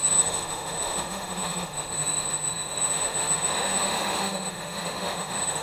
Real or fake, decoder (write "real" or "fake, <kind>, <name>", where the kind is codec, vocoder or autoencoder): fake, autoencoder, DAC-VAE